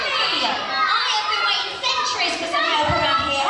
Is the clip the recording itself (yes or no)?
yes